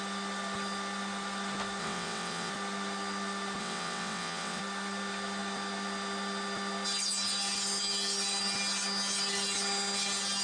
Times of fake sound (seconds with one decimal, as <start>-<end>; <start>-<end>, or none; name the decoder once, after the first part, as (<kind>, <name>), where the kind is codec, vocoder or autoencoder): 1.8-2.5 (vocoder, WaveNeXt); 3.6-4.6